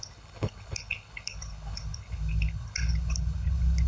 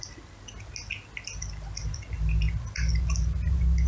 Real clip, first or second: second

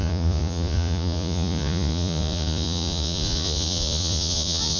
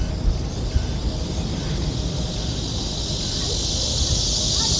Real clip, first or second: second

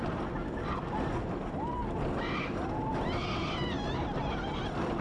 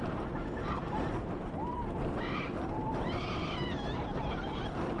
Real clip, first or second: first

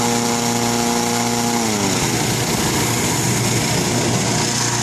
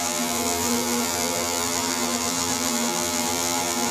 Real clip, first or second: first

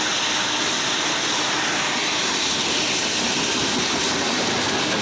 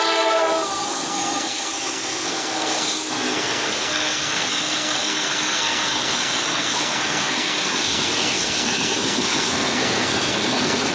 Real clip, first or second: first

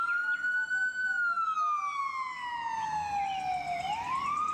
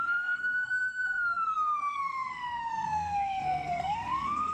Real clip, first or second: first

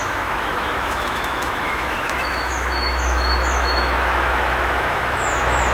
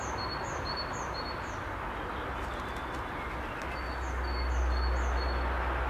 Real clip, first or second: second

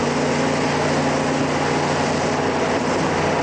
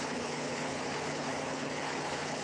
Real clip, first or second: first